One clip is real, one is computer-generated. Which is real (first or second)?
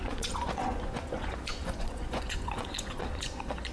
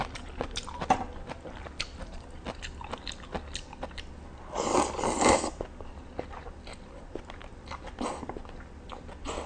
second